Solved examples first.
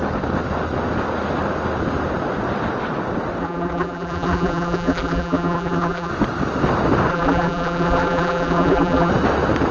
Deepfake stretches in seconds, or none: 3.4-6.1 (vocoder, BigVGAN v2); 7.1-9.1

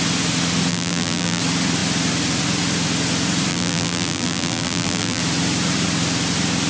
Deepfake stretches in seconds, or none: 0.7-1.4 (vocoder, BigVGAN v2); 3.5-5.2

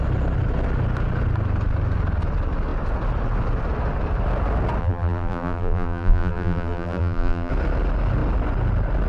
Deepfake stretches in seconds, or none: 4.8-7.5 (vocoder, BigVGAN v2)

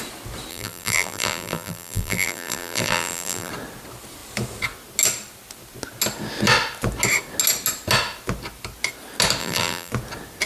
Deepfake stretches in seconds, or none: 0.5-3.5 (vocoder, BigVGAN v2); 9.4-9.9

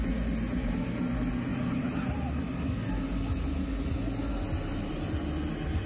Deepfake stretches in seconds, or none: 1.5-2.1 (vocoder, BigVGAN v2)

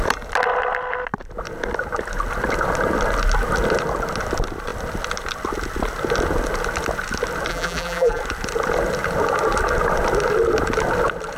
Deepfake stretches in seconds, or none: 7.5-8.2 (vocoder, BigVGAN v2)

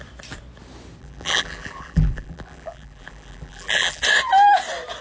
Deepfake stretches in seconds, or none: 1.0-4.0 (vocoder, BigVGAN v2)